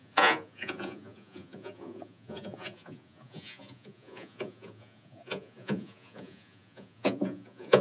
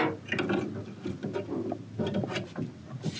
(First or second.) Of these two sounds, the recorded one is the second